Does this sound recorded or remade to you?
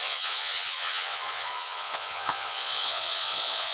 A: remade